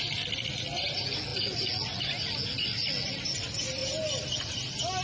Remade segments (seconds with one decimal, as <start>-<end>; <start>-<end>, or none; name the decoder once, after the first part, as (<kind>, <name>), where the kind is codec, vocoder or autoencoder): none